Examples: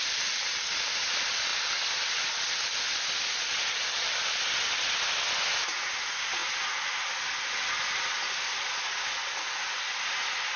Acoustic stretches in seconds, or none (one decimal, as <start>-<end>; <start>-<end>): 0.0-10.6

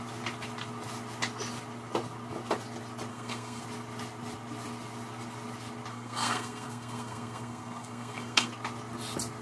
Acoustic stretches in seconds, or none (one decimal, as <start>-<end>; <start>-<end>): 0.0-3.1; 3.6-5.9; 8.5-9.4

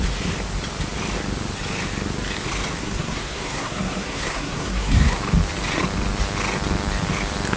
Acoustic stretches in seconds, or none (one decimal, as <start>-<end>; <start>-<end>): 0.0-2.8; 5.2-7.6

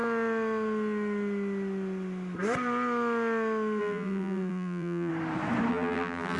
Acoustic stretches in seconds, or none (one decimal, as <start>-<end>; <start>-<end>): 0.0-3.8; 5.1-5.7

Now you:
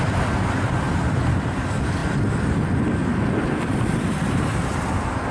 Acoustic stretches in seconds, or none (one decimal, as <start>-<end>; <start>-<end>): 0.0-5.3

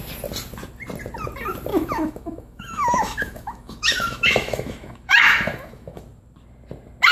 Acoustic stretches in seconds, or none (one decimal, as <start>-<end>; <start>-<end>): 0.0-1.7; 6.0-7.1